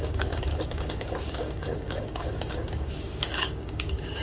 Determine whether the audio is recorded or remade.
remade